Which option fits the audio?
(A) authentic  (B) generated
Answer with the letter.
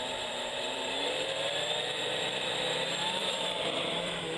B